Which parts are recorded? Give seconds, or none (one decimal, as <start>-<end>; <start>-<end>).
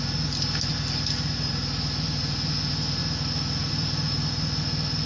0.0-5.1